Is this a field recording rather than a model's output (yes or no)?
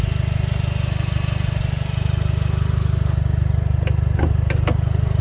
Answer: yes